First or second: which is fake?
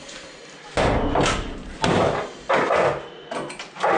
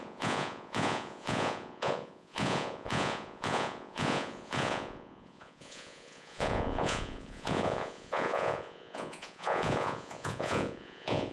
second